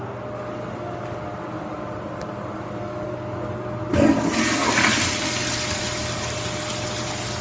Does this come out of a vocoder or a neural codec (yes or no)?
no